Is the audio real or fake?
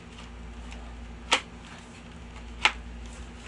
real